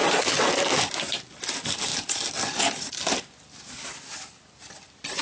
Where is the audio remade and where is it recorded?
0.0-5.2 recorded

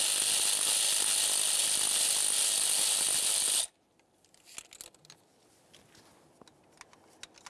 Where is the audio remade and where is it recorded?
0.0-7.5 recorded

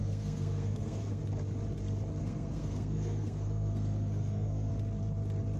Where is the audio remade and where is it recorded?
0.0-1.2 remade; 1.2-2.2 recorded; 2.2-4.7 remade; 4.7-5.6 recorded

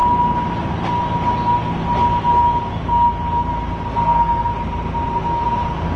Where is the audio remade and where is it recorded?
0.0-3.9 recorded; 3.9-4.5 remade; 4.5-6.0 recorded

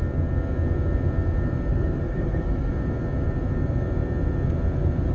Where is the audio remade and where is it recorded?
0.0-1.7 recorded; 1.7-2.7 remade; 2.7-5.1 recorded

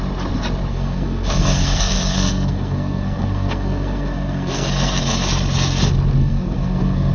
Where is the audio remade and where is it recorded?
0.0-0.7 recorded; 0.7-5.0 remade; 5.0-6.2 recorded; 6.2-7.1 remade

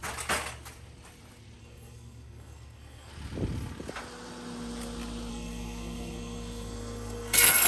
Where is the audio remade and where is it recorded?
0.0-1.6 recorded; 1.6-3.1 remade; 3.1-5.3 recorded; 5.3-7.7 remade

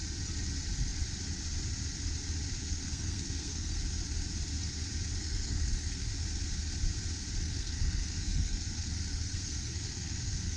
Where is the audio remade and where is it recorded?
0.0-2.6 recorded; 2.6-3.8 remade; 3.8-5.2 recorded; 5.2-6.1 remade; 6.1-7.4 recorded; 7.4-10.6 remade